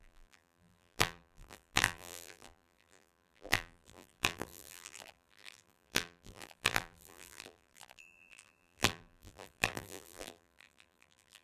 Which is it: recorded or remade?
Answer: remade